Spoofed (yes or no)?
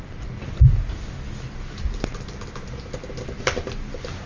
no